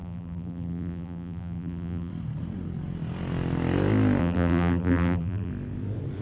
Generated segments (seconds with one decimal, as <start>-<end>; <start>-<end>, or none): 0.0-2.1; 4.2-5.5